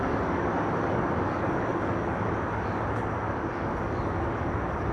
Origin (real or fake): fake